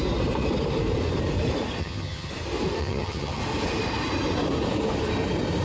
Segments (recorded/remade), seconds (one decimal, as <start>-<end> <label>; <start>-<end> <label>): 0.0-1.8 recorded; 1.8-2.3 remade; 2.3-2.8 recorded; 2.8-3.4 remade; 3.4-5.6 recorded